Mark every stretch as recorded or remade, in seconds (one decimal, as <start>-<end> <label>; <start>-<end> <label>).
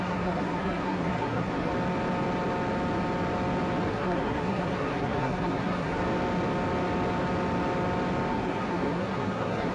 0.0-1.7 remade; 1.7-3.9 recorded; 3.9-6.0 remade; 6.0-8.3 recorded; 8.3-9.7 remade